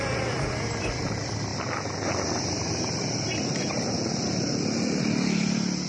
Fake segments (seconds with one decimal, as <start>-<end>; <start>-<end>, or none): 0.0-5.9